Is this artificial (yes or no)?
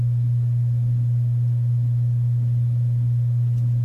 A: no